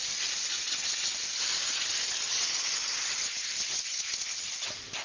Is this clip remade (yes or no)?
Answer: no